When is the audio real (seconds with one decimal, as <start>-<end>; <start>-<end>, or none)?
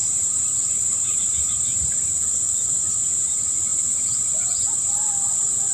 2.1-5.7